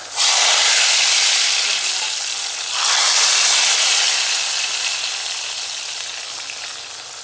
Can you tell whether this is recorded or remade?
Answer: recorded